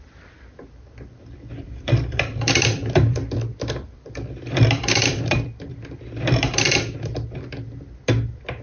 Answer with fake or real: fake